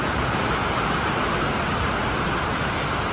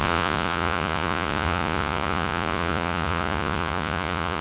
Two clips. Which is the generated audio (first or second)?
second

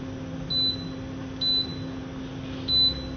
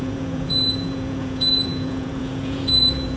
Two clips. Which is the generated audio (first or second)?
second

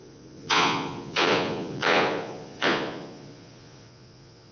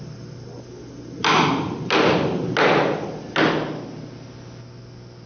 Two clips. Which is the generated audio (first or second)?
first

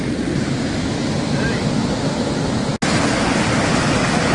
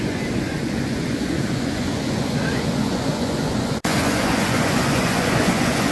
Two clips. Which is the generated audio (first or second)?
second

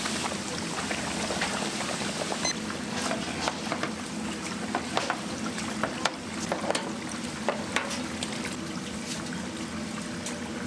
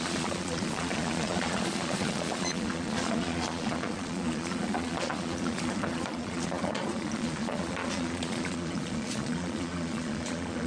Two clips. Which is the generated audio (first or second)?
second